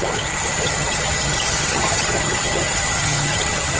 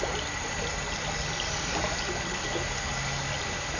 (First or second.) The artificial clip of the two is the first